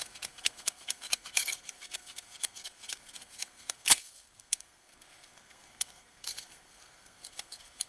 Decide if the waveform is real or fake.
fake